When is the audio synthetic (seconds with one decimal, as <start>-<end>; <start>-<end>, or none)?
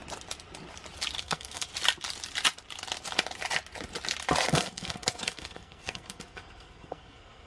1.2-1.7; 4.5-7.5